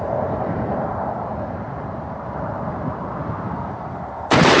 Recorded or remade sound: remade